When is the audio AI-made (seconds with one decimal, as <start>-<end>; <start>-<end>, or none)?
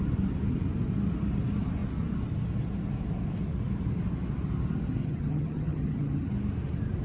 5.0-6.3